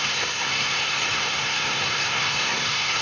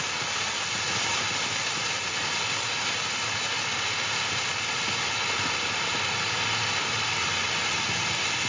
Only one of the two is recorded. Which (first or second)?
second